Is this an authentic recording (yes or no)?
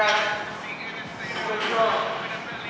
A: yes